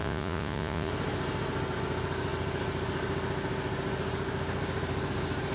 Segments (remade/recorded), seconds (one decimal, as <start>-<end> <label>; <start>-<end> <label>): 0.0-0.9 remade; 0.9-5.5 recorded